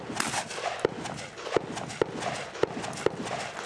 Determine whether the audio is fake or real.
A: real